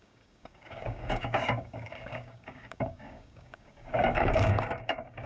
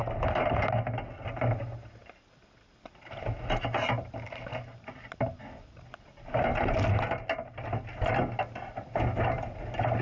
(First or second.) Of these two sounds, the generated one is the first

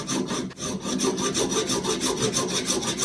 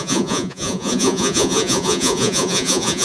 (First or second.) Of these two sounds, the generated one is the second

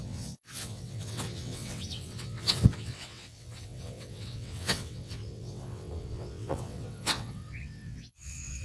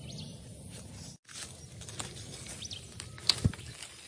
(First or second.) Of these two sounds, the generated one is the first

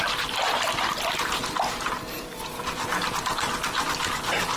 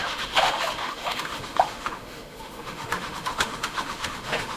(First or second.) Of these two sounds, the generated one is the second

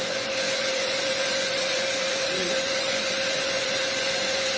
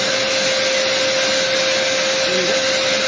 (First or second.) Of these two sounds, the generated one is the first